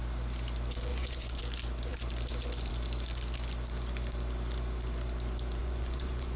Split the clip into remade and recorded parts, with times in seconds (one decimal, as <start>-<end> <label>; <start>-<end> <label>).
0.0-0.9 recorded; 0.9-1.4 remade; 1.4-5.6 recorded; 5.6-6.4 remade